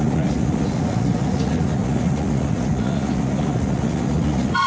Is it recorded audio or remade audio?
remade